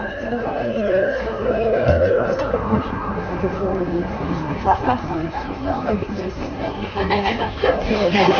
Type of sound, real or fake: fake